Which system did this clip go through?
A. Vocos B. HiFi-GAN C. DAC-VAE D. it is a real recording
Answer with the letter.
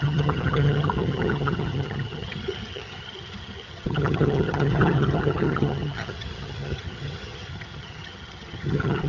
B